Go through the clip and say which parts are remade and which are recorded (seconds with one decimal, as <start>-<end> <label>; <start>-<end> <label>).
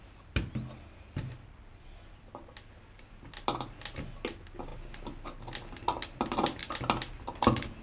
0.0-7.8 recorded